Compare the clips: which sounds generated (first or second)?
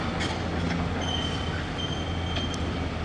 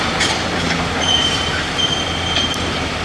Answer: second